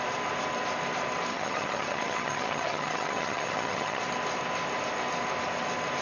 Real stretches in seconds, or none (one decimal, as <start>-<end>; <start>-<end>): 0.0-1.3; 4.0-6.0